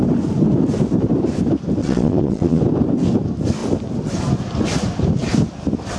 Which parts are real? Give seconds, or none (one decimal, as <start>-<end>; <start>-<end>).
0.0-1.8; 2.6-6.0